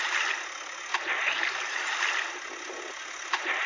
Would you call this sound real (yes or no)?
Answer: yes